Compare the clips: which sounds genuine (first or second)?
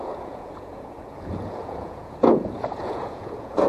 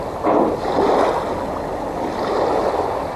second